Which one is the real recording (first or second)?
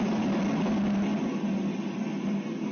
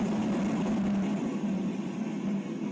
first